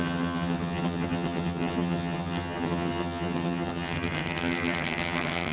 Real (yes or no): no